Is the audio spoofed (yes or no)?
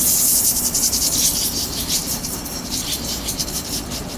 yes